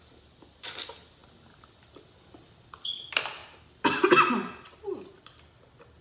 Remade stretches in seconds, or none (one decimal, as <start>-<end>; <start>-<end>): none